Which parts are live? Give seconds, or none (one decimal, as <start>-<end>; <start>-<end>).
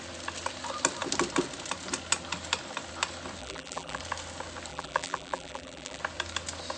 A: 0.0-3.4; 4.0-4.7; 6.0-6.8